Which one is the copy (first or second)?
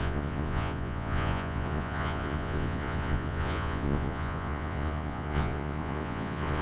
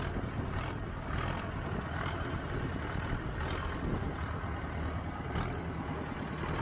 first